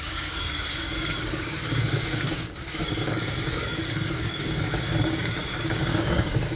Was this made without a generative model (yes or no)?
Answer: no